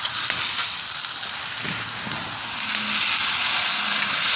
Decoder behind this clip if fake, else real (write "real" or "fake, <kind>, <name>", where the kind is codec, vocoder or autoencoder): real